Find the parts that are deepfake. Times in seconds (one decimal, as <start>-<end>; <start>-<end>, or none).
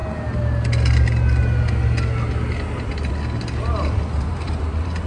none